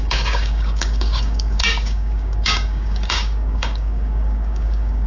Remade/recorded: remade